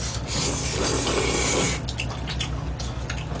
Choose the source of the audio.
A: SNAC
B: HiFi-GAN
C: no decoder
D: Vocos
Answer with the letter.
C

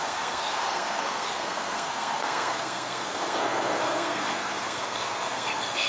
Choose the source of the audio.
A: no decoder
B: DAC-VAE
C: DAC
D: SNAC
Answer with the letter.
D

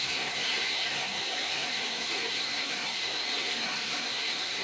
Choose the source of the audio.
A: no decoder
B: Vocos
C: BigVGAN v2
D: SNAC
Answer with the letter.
D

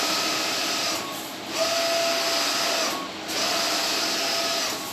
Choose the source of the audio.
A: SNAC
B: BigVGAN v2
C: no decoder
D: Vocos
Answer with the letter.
C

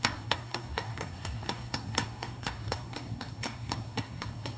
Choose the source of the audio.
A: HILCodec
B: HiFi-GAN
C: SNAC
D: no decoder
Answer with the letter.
C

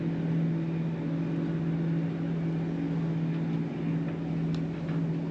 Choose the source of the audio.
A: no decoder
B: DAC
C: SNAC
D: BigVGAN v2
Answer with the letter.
A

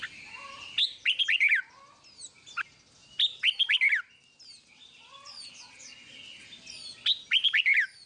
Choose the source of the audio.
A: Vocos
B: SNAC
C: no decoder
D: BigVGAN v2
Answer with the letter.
C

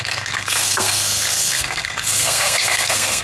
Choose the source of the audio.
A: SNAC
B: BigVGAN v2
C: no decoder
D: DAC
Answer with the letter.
A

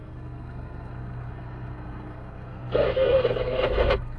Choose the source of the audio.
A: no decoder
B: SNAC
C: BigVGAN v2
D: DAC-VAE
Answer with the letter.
B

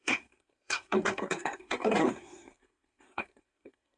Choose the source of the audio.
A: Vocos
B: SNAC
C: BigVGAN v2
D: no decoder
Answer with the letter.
B